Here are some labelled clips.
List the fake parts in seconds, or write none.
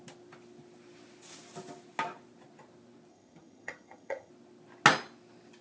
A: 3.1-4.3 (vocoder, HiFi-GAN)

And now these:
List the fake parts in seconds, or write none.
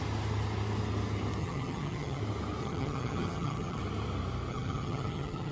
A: 1.4-2.2 (vocoder, HiFi-GAN); 2.6-3.8; 4.5-5.5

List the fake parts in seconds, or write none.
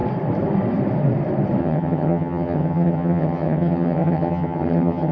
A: 1.6-5.1 (vocoder, HiFi-GAN)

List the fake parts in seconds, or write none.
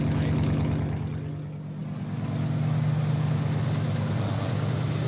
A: none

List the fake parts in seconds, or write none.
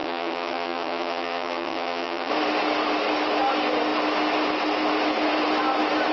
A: 0.0-2.3 (vocoder, HiFi-GAN)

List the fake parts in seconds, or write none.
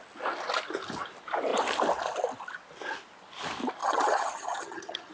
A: 3.8-5.1 (vocoder, HiFi-GAN)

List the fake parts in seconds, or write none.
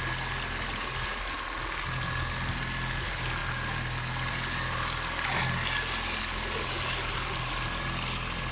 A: none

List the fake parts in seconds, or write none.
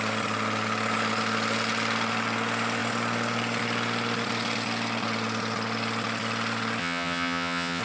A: 6.8-7.8 (vocoder, HiFi-GAN)